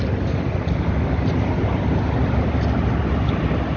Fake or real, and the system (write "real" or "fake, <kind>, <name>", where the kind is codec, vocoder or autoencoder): real